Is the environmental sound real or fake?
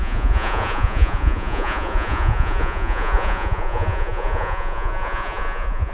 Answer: fake